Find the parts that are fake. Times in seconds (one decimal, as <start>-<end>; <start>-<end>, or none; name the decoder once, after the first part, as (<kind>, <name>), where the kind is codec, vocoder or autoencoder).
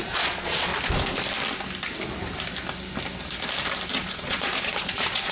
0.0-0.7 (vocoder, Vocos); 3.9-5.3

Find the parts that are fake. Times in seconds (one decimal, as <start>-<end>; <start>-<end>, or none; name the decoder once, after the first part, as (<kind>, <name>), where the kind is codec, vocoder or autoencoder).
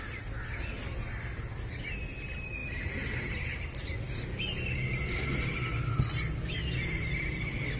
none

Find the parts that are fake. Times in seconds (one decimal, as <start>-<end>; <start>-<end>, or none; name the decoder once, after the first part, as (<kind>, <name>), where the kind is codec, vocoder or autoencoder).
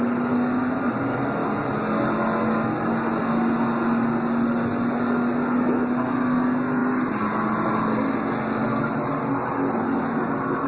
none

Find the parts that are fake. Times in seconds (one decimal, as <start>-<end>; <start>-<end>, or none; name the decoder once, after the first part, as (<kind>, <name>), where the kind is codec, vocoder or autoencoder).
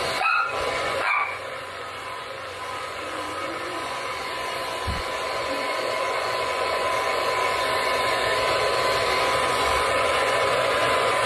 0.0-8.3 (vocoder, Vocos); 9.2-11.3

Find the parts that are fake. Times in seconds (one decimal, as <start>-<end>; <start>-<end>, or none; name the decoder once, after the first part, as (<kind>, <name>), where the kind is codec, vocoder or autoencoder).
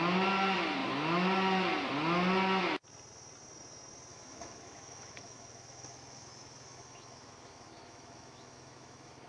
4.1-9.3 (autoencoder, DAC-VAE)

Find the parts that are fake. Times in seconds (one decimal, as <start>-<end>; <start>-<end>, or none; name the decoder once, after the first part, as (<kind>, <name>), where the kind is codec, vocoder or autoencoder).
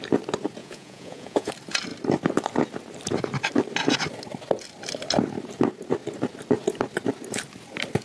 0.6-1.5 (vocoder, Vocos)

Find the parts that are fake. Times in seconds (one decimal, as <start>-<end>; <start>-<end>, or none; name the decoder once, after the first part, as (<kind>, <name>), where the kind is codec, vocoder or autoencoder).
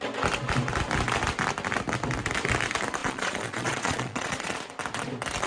3.0-4.6 (vocoder, Vocos)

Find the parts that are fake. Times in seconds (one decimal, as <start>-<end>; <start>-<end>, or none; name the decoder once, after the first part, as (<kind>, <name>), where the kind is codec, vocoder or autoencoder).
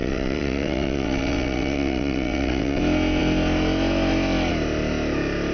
0.0-2.8 (vocoder, WaveNeXt)